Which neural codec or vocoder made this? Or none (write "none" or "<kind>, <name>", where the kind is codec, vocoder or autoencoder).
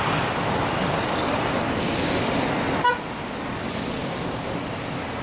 vocoder, BigVGAN v2